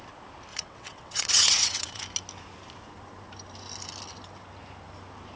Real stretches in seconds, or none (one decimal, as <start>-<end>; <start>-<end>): 0.0-0.5; 2.0-5.4